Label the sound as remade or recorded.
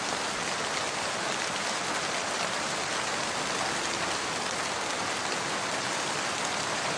recorded